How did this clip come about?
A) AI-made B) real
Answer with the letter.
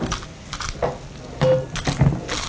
B